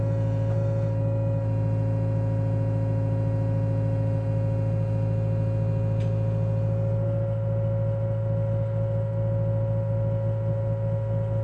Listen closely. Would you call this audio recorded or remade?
recorded